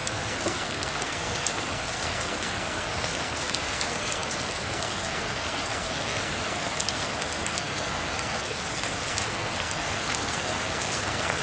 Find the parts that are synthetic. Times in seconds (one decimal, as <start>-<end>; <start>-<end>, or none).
0.0-11.4

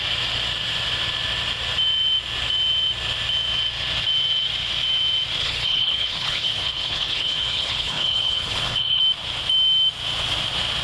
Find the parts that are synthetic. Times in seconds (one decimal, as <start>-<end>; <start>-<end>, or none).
5.4-9.0

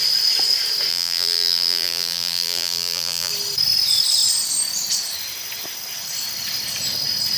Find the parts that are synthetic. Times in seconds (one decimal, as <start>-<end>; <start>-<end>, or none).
0.9-3.3

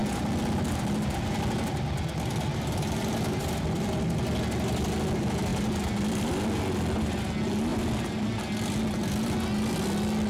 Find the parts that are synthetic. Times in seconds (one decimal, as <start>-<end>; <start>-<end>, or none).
none